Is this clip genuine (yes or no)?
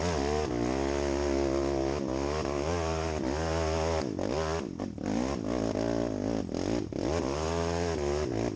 yes